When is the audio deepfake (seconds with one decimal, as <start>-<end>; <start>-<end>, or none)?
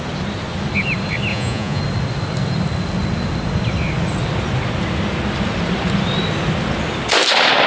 1.3-1.8